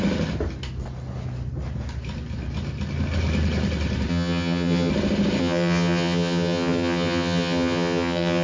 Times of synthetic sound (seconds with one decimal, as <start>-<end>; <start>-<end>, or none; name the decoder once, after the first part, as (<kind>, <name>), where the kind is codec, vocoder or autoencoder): 4.1-4.9 (vocoder, HiFi-GAN); 5.4-8.4